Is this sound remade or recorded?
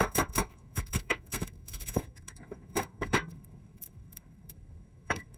remade